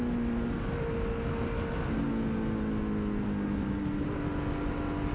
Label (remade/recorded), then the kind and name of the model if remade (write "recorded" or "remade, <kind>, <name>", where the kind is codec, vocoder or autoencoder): recorded